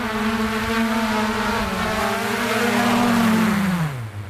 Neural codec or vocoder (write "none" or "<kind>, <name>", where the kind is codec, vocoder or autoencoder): none